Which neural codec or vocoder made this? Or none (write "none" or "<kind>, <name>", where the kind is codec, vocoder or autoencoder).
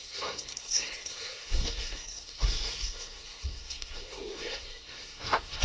codec, SNAC